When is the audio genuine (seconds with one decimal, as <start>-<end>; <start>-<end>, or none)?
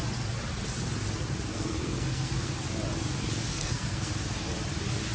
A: 0.0-1.5; 2.5-3.5; 4.1-5.1